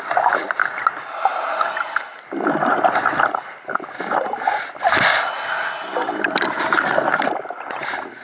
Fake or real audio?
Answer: real